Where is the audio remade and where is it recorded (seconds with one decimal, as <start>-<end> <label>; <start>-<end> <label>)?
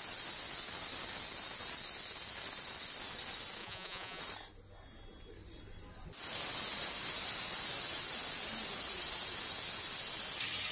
0.0-3.6 recorded; 3.6-4.2 remade; 4.2-10.7 recorded